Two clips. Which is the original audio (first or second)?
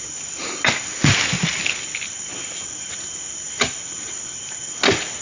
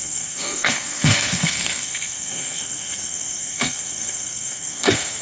first